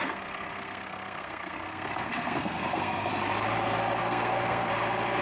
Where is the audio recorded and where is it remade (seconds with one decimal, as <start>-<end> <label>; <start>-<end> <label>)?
0.0-3.1 remade; 3.1-4.0 recorded; 4.0-4.7 remade; 4.7-5.2 recorded